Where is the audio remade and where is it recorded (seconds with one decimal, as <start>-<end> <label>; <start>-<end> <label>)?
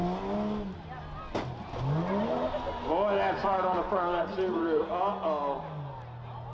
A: 0.0-3.4 recorded; 3.4-4.8 remade; 4.8-6.5 recorded